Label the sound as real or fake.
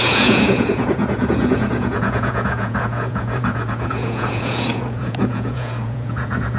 fake